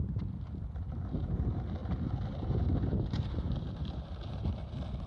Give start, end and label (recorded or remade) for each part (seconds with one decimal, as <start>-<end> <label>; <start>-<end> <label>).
0.0-5.1 remade